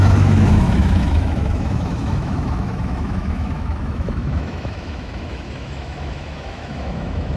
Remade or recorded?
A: remade